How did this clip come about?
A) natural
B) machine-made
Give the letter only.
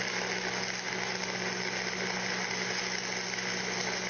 A